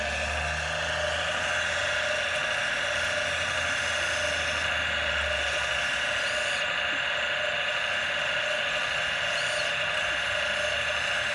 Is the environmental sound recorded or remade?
recorded